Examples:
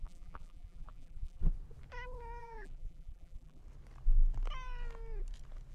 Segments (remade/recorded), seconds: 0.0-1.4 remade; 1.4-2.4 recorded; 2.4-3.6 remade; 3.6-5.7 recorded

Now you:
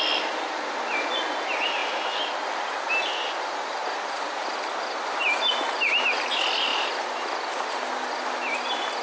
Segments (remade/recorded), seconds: 0.0-9.0 recorded

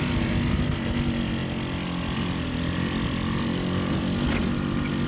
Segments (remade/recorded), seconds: 0.0-5.1 recorded

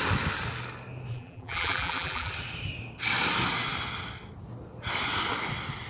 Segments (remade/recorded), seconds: 0.0-1.1 recorded; 1.1-2.3 remade; 2.3-5.9 recorded